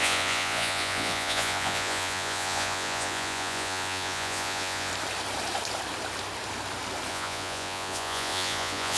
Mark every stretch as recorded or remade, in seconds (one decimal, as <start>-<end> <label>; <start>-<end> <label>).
0.0-4.9 remade; 4.9-7.1 recorded; 7.1-9.0 remade